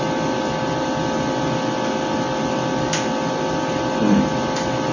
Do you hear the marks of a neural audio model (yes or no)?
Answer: no